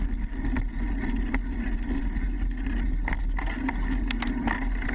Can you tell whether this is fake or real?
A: real